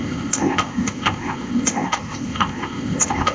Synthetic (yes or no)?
yes